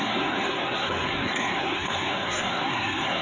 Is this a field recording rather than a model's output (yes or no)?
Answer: no